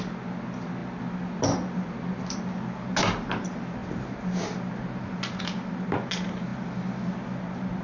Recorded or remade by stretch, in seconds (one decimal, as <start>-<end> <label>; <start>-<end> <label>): 0.0-7.8 recorded